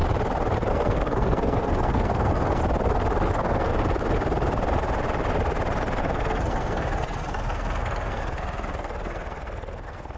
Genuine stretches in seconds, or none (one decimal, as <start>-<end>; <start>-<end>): 0.0-0.7; 2.6-3.3; 3.7-6.0